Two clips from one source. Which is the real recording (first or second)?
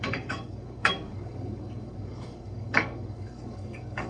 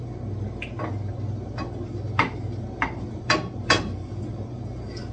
second